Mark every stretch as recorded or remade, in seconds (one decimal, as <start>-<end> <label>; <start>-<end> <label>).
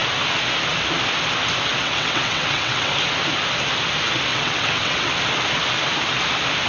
0.0-1.7 recorded; 1.7-2.9 remade; 2.9-4.3 recorded; 4.3-5.1 remade; 5.1-6.7 recorded